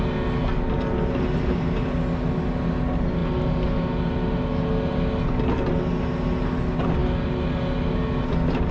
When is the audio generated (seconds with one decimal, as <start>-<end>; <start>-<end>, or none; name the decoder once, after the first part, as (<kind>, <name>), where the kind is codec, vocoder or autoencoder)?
none